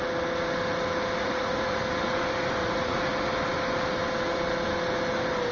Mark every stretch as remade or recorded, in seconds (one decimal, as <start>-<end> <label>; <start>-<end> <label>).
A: 0.0-1.2 recorded; 1.2-1.8 remade; 1.8-2.6 recorded; 2.6-3.1 remade; 3.1-5.5 recorded